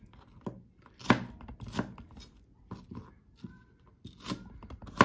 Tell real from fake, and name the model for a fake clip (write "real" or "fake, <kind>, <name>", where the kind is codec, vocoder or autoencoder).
real